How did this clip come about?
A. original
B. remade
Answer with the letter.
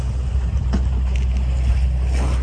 A